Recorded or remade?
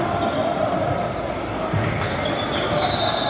recorded